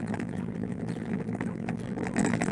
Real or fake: fake